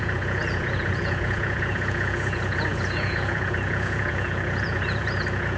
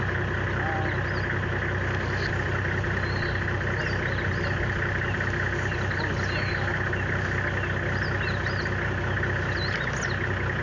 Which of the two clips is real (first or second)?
second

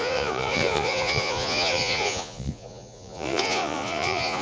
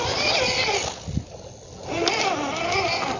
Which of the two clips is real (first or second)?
second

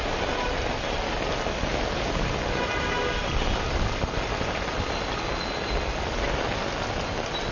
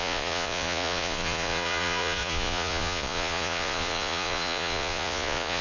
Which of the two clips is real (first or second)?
first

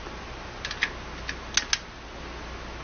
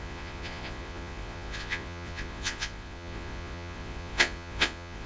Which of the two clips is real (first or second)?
first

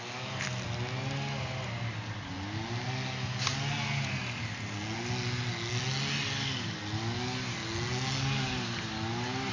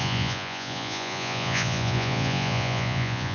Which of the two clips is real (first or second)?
first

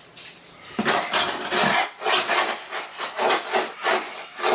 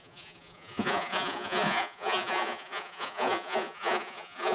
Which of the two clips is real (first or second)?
first